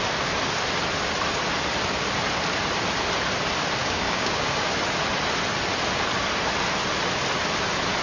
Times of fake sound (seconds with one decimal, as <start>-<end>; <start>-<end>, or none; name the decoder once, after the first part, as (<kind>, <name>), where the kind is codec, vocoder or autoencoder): 3.8-4.7 (codec, DAC)